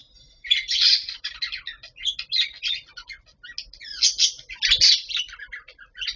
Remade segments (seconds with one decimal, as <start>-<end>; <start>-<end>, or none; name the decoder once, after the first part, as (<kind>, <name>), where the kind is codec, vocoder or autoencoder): 0.0-1.4 (vocoder, BigVGAN v2)